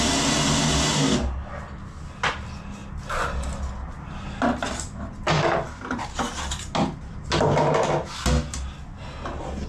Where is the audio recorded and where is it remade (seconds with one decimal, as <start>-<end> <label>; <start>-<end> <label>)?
0.0-9.7 recorded